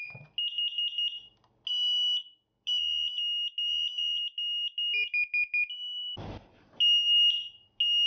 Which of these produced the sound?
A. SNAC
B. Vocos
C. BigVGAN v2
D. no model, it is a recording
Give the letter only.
D